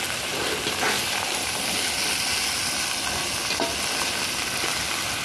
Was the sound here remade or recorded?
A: recorded